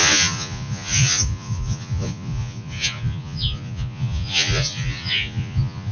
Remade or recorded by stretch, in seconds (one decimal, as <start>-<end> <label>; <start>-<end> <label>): 0.0-5.9 remade